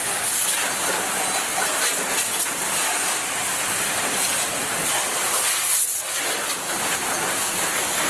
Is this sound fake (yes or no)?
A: no